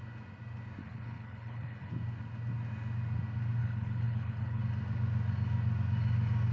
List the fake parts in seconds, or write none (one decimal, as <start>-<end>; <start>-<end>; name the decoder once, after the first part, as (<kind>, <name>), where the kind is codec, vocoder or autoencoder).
0.8-1.9 (codec, HILCodec); 3.6-4.6